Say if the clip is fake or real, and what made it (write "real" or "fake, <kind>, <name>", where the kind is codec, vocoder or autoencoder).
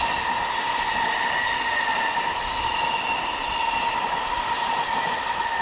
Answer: real